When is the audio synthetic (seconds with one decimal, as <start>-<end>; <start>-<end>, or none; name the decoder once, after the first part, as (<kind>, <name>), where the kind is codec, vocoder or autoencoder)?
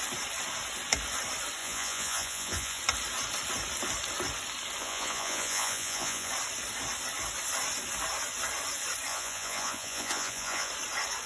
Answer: 1.6-2.8 (vocoder, Vocos); 4.8-6.3; 9.1-10.7